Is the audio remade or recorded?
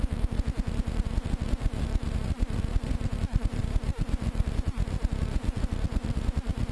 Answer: recorded